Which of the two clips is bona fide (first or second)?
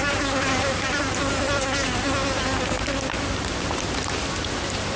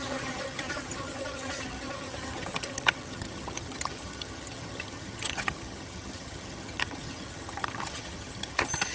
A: first